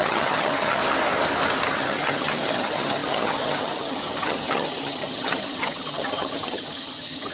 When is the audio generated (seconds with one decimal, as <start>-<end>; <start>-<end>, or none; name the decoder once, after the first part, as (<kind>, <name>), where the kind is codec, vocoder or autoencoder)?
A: 0.0-0.8 (vocoder, HiFi-GAN); 1.7-7.3